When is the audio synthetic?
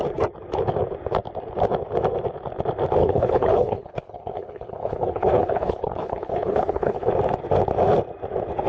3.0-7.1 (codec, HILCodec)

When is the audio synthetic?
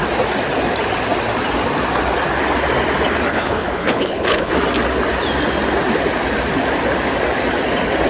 3.3-4.5 (codec, HILCodec)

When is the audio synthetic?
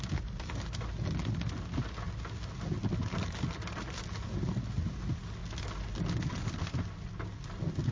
none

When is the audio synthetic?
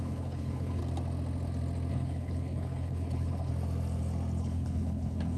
0.0-0.8 (codec, HILCodec); 1.9-3.5; 4.4-5.4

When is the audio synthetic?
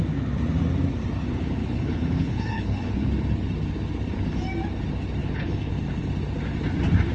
1.6-3.1 (codec, HILCodec); 5.2-5.7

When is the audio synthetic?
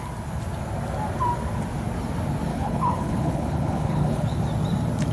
2.5-4.4 (codec, HILCodec)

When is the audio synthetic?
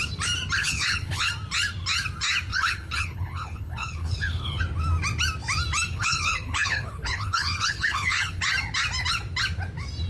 0.6-1.3 (codec, HILCodec); 2.5-4.6; 5.9-8.4